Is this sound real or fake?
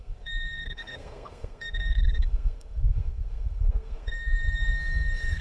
fake